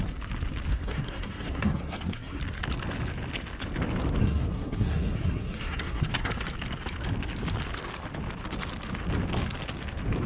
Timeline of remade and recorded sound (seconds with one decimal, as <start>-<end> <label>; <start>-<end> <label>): 0.0-0.7 recorded; 0.7-2.4 remade; 2.4-4.2 recorded; 4.2-6.3 remade; 6.3-10.3 recorded